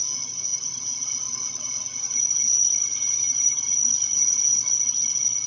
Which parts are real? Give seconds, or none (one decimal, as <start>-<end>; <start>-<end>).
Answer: 0.0-5.5